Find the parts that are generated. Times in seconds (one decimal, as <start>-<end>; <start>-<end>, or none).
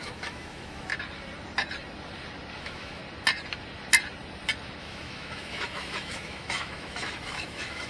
0.0-0.9; 2.6-3.0; 4.8-7.9